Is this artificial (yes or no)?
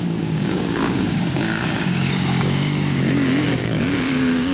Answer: yes